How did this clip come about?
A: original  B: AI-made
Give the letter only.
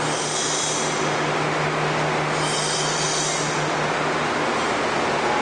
A